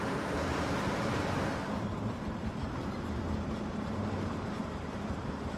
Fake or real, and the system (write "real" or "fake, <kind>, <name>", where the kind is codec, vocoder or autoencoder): fake, vocoder, BigVGAN v2